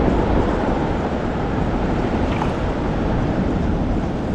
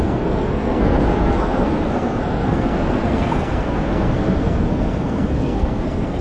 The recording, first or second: first